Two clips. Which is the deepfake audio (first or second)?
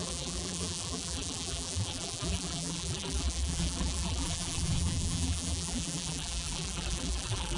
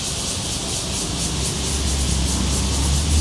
first